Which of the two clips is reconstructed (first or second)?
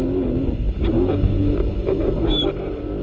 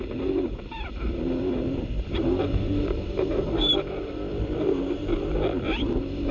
second